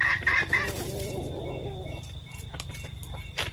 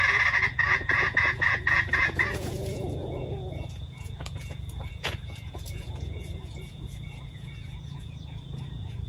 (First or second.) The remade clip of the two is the second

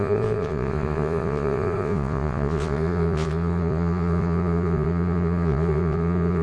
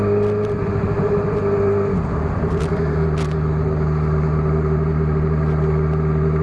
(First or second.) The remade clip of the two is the first